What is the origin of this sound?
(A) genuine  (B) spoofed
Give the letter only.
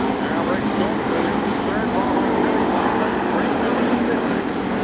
A